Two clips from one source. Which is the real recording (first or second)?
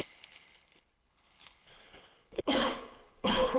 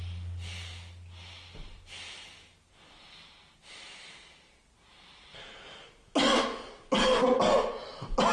second